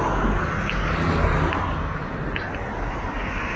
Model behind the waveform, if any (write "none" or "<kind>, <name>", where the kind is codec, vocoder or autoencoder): none